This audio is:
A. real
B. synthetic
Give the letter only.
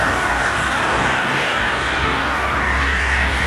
B